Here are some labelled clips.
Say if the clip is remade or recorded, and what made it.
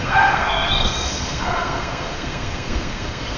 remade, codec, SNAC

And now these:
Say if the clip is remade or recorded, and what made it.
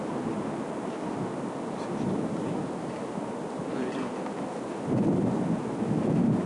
recorded